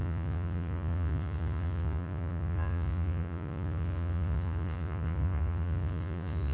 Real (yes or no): no